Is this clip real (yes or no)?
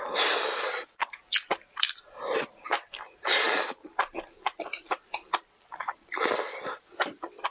yes